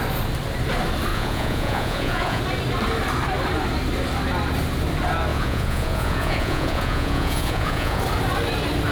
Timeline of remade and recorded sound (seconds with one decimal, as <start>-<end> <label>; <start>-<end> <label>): 0.0-1.1 recorded; 1.1-2.4 remade; 2.4-5.3 recorded; 5.3-8.0 remade; 8.0-8.9 recorded